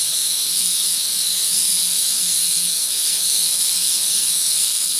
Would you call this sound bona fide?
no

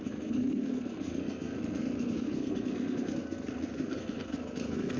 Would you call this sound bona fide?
no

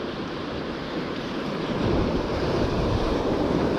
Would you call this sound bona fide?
no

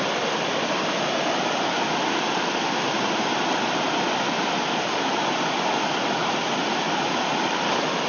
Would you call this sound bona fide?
yes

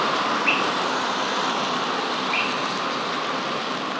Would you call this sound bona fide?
yes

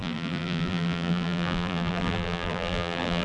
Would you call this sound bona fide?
no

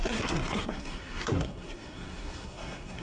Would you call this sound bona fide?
no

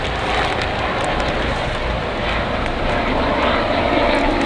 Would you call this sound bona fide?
yes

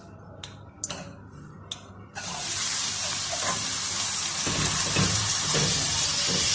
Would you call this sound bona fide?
yes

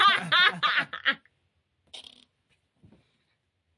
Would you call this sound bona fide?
yes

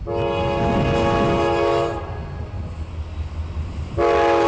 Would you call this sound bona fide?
yes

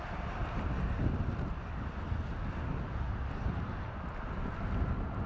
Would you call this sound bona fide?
yes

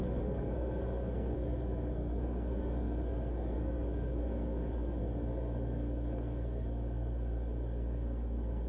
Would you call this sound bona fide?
no